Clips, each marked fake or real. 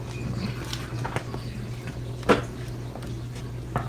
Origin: real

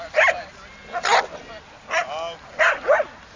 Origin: real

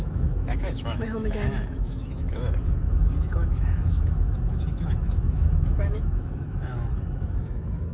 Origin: fake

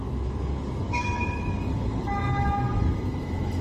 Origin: fake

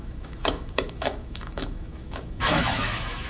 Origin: fake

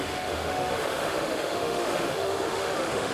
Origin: fake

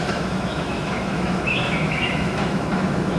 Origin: fake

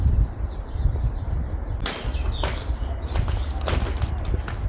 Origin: real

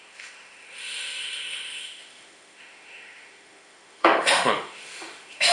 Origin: fake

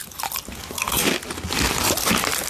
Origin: real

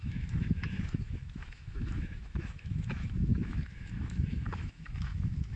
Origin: fake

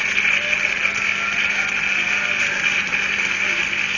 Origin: real